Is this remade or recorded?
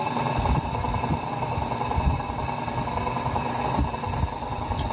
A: recorded